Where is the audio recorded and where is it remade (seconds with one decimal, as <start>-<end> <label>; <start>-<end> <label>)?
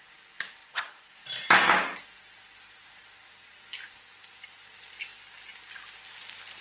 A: 0.0-6.6 recorded